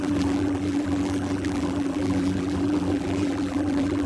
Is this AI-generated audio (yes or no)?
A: yes